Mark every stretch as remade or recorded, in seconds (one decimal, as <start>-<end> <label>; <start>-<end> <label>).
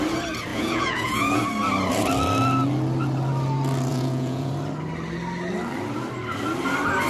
0.0-0.5 recorded; 0.5-1.4 remade; 1.4-3.9 recorded; 3.9-4.5 remade; 4.5-7.1 recorded